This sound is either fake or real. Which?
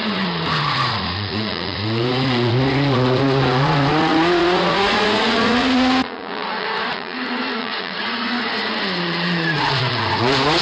fake